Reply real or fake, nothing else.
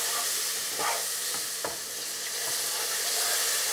real